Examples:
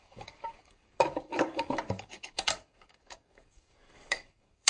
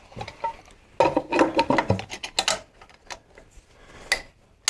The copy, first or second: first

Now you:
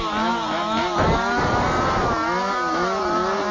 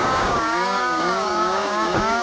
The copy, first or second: second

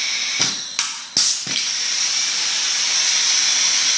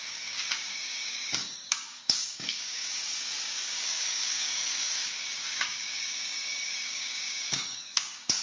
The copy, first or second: second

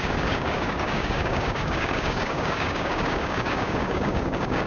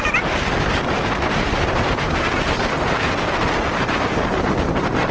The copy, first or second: first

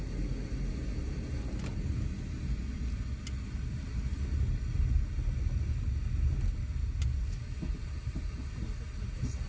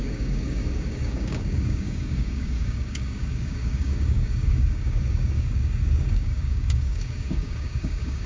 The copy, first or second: second